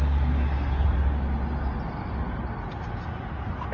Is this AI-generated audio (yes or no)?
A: no